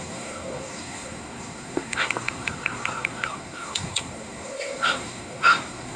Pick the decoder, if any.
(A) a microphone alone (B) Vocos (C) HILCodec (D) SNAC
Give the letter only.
D